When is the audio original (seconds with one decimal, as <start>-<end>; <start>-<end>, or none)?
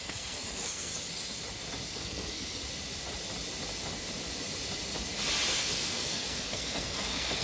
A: 0.9-1.9; 2.6-5.5